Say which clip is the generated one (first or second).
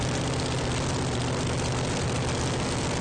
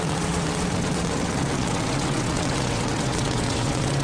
second